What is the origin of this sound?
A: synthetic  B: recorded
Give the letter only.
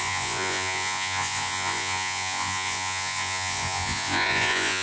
A